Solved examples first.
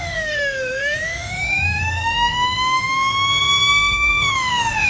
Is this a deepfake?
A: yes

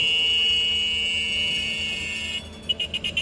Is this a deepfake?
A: no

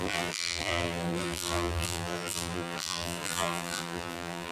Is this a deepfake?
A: yes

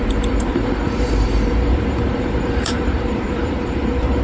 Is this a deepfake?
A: yes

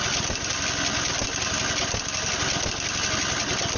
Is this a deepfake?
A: no